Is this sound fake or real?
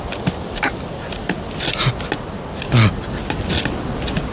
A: real